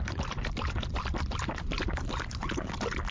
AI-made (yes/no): no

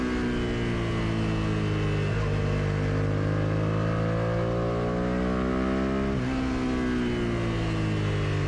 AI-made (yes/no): no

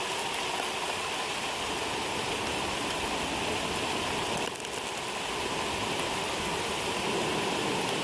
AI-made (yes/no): no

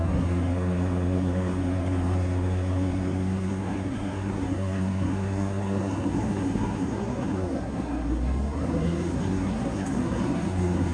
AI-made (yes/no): yes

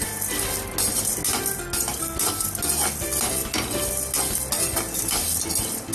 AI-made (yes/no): no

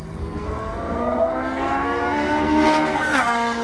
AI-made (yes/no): yes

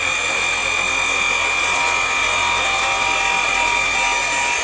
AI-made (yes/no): no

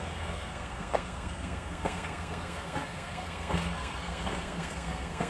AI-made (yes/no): yes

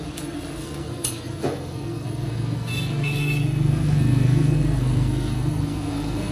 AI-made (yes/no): yes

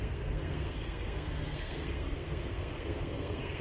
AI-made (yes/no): yes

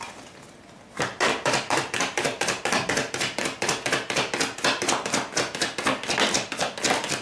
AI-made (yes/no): no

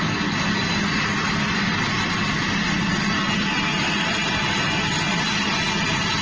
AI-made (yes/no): no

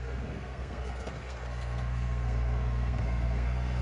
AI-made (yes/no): yes